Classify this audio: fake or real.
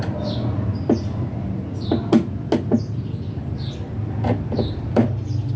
real